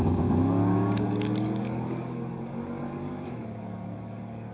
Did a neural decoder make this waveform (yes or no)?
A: yes